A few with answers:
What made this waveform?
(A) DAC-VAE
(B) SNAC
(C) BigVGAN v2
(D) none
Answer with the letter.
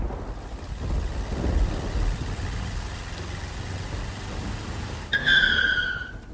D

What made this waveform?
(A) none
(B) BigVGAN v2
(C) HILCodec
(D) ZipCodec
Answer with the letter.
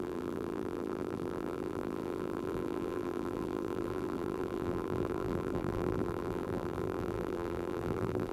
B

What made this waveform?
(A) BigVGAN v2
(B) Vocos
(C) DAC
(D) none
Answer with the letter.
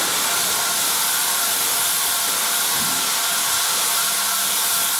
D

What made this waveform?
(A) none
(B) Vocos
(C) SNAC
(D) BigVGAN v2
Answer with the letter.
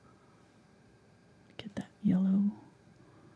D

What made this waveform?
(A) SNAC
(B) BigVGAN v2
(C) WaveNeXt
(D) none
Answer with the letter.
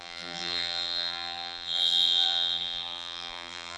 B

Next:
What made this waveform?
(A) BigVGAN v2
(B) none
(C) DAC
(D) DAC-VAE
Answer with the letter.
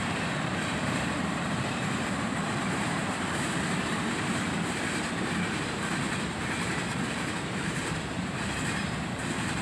A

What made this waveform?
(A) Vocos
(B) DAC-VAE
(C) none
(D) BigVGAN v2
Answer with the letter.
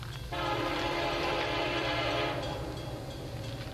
D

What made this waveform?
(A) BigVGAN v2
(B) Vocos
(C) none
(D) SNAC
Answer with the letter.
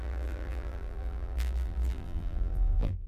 A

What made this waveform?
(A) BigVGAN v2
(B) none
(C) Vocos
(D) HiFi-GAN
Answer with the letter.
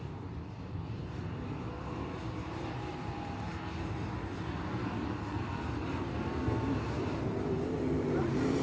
A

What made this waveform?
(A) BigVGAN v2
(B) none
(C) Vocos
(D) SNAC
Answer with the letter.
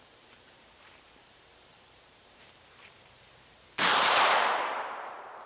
A